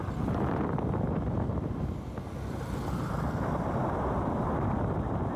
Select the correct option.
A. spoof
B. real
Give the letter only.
B